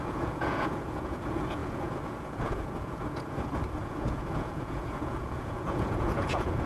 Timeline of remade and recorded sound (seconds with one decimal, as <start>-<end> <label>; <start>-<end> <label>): 0.0-6.7 remade